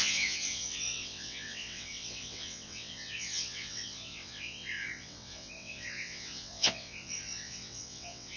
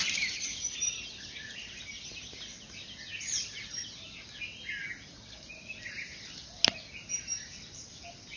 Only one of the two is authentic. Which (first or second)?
second